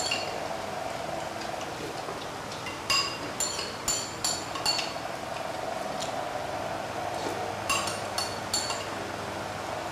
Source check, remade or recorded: recorded